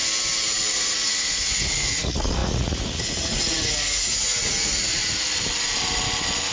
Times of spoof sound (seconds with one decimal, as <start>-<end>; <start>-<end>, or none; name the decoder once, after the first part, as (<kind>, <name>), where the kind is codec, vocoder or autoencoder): 0.7-5.0 (vocoder, Vocos)